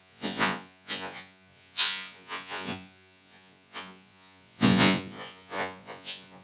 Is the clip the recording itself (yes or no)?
no